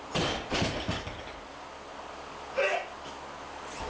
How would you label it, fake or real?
real